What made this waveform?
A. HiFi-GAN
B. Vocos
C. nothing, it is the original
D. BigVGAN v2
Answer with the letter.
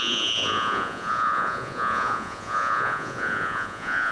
B